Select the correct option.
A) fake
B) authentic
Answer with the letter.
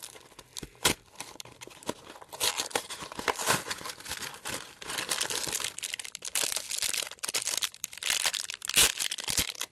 B